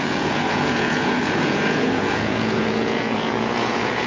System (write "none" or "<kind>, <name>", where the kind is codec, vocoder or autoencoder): vocoder, Vocos